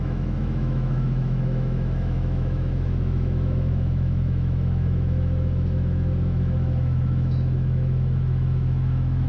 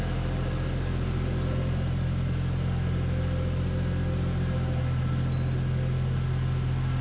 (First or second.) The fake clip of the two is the first